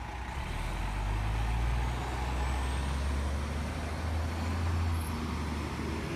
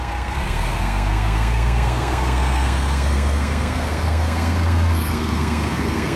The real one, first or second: first